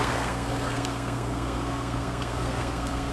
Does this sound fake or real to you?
fake